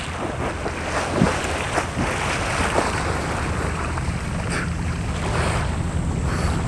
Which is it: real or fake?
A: real